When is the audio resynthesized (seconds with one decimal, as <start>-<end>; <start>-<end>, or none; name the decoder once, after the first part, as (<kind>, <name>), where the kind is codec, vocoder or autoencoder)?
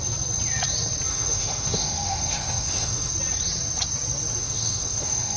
1.1-3.1 (autoencoder, DAC-VAE); 4.4-5.4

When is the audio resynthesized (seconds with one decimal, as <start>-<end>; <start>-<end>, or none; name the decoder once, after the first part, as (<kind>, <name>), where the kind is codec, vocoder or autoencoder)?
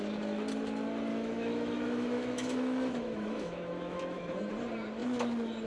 1.1-4.5 (autoencoder, DAC-VAE)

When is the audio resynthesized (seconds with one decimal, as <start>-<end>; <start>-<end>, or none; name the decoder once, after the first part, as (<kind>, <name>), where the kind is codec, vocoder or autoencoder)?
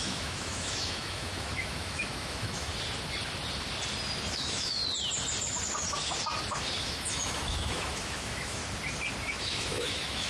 0.0-2.7 (autoencoder, DAC-VAE); 4.3-4.8; 6.8-8.6; 9.2-10.3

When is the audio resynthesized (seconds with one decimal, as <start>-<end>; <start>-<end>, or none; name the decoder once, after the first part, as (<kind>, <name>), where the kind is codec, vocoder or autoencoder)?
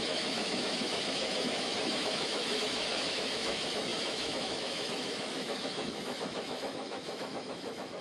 0.0-8.0 (autoencoder, DAC-VAE)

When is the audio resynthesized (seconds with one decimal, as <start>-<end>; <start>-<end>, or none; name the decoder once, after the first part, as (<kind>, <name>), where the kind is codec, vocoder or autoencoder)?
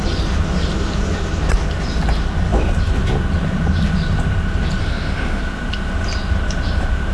4.8-5.4 (autoencoder, DAC-VAE)